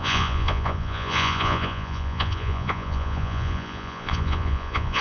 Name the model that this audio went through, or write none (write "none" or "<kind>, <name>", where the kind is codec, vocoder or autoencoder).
vocoder, Vocos